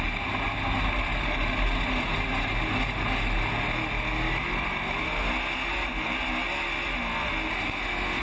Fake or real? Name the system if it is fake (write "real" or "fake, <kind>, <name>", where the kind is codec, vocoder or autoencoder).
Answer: real